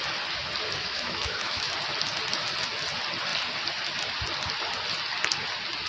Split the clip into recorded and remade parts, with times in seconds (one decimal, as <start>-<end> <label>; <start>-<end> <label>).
0.0-0.8 recorded; 0.8-1.7 remade; 1.7-5.9 recorded